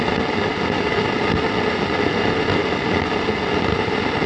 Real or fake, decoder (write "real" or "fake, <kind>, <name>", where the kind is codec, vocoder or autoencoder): real